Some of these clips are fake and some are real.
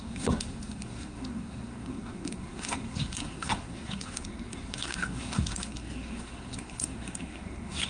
fake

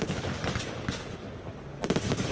real